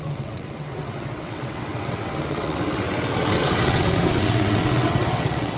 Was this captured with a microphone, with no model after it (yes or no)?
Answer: no